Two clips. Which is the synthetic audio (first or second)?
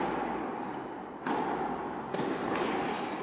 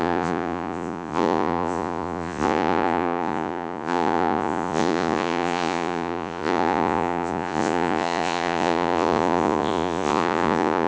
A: second